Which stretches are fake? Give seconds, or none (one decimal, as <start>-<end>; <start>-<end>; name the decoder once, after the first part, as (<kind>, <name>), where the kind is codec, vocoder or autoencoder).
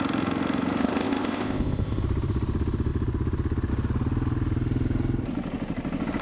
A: 0.8-2.0 (codec, ZipCodec)